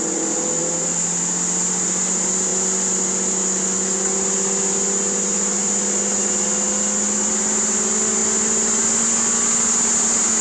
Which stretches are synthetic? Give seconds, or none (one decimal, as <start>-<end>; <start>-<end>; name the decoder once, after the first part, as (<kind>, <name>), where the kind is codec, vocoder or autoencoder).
none